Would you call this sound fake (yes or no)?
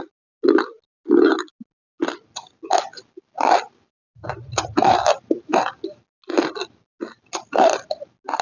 no